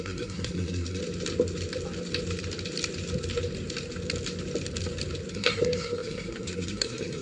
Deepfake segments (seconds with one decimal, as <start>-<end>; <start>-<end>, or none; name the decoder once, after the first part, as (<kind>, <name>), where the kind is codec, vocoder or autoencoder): 0.0-1.0 (codec, SNAC); 5.3-7.2